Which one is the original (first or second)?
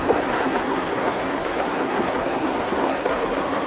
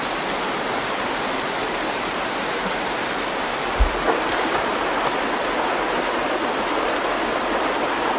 second